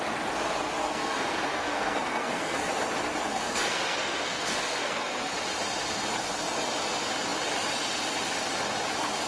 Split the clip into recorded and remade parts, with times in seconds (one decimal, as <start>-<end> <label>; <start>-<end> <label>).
0.0-0.8 recorded; 0.8-2.7 remade; 2.7-3.3 recorded; 3.3-5.3 remade; 5.3-9.3 recorded

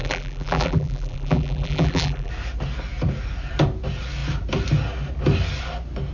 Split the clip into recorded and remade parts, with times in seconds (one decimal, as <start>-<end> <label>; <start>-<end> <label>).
0.0-2.3 remade; 2.3-6.1 recorded

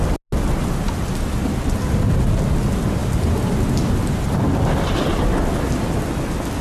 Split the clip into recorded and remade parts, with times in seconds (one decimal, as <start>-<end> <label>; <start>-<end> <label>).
0.0-6.6 recorded

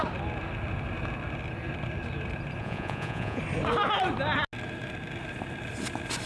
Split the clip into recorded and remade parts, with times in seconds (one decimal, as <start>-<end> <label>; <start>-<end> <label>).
0.0-2.6 recorded; 2.6-3.4 remade; 3.4-6.3 recorded

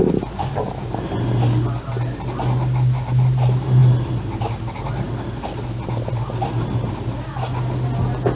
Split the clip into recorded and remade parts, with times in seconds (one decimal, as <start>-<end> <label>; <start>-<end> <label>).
0.0-8.3 recorded

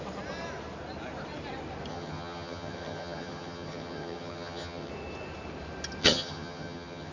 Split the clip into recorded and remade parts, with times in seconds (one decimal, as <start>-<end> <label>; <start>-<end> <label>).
0.0-1.9 recorded; 1.9-4.9 remade; 4.9-6.0 recorded; 6.0-7.1 remade

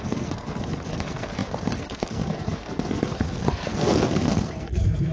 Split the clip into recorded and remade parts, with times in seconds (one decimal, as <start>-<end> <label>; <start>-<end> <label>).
0.0-5.1 remade